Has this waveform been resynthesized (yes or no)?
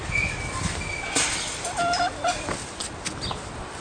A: no